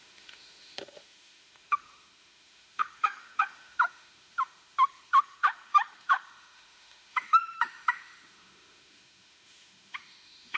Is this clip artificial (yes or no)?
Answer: yes